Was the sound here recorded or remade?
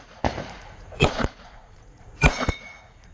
remade